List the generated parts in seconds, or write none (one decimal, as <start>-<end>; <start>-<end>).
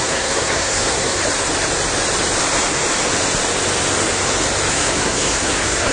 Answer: 0.0-1.2; 4.7-5.9